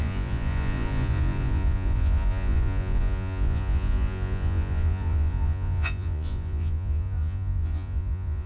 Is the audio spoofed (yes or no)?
yes